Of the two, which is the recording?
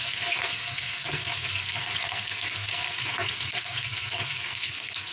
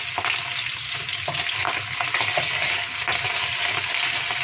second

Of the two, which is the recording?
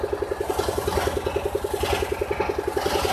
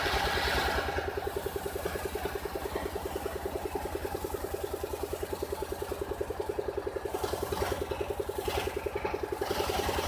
first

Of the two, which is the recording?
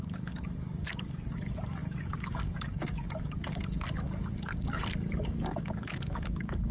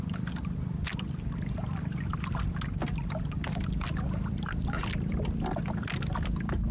second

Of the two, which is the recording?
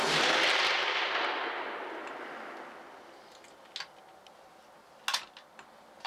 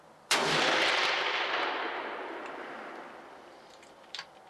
first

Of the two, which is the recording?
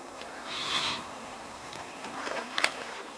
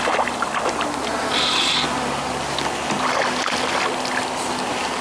second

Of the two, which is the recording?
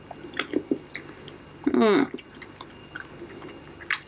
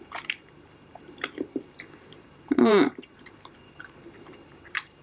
first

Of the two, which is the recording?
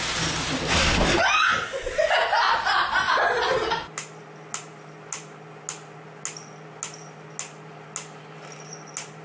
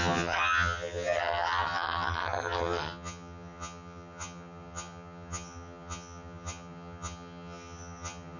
first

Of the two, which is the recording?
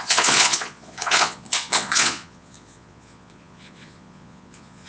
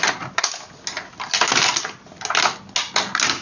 second